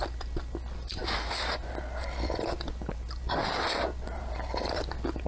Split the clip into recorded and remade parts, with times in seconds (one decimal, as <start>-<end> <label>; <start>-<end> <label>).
0.0-5.3 recorded